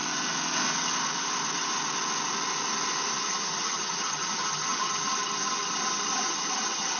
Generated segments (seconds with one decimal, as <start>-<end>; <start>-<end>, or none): 3.2-7.0